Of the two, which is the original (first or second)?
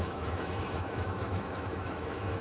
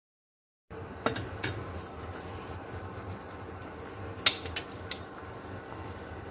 second